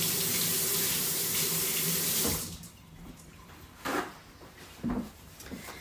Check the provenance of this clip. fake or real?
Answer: fake